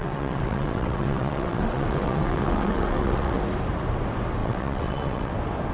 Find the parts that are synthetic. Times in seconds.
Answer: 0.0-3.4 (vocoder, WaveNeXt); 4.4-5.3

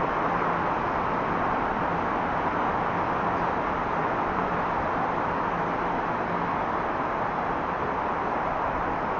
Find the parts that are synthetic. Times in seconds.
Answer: 4.0-4.5 (vocoder, Vocos)

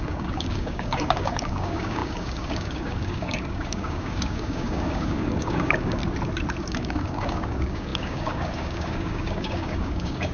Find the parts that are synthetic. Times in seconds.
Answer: 0.0-6.0 (codec, DAC); 6.6-10.3

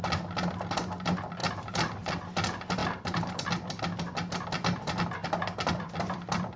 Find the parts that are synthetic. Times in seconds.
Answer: 1.4-2.1 (vocoder, BigVGAN v2); 2.8-3.8; 5.2-6.6

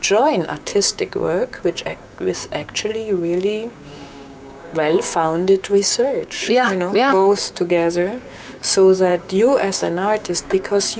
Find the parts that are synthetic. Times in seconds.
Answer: 0.0-11.0 (codec, DAC)